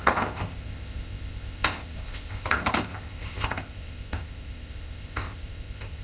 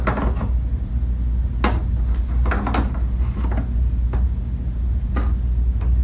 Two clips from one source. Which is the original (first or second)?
second